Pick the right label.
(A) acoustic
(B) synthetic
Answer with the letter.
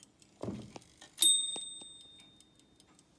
A